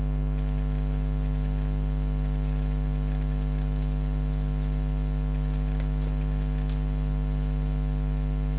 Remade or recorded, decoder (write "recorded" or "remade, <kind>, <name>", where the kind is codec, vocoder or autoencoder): recorded